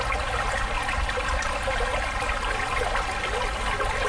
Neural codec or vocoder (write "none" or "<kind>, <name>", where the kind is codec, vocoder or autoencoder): none